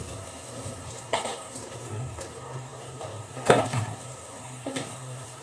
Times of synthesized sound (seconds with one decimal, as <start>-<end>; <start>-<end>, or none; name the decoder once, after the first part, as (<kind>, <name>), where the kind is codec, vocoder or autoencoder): 0.0-5.4 (codec, SNAC)